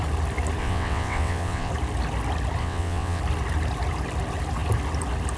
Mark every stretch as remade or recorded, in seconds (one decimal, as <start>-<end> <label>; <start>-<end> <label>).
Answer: 0.0-0.6 recorded; 0.6-1.7 remade; 1.7-2.6 recorded; 2.6-3.2 remade; 3.2-5.4 recorded